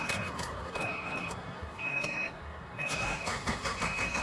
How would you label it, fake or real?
fake